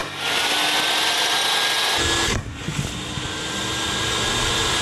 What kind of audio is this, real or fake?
real